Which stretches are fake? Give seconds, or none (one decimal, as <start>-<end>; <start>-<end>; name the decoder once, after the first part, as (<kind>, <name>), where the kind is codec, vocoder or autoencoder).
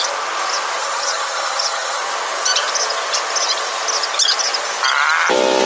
0.8-2.0 (vocoder, HiFi-GAN)